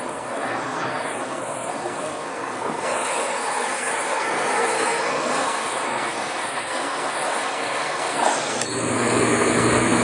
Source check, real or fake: fake